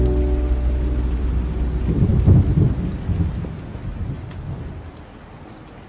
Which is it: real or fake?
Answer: real